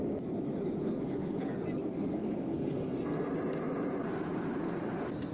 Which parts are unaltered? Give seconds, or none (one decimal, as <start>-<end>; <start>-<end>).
0.0-0.8; 1.4-1.9; 3.3-5.3